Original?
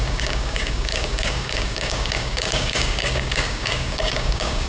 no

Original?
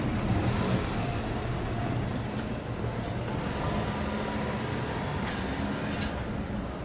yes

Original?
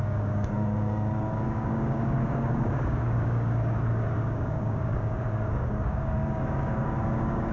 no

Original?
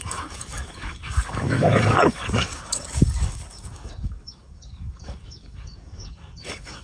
no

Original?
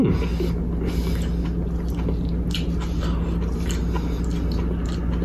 yes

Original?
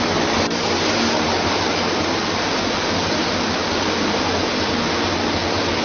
yes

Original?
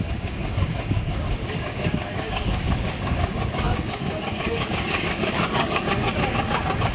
no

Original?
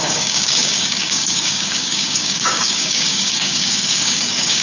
no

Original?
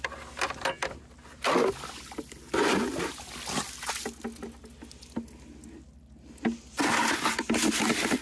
yes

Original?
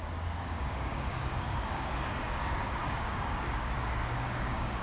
no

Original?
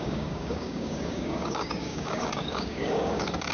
no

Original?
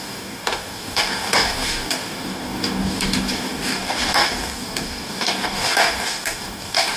no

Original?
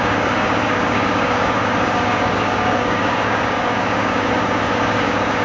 no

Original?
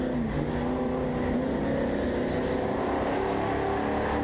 yes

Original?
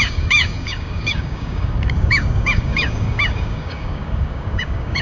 no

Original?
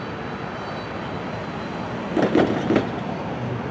yes